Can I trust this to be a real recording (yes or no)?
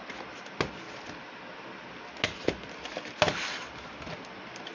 yes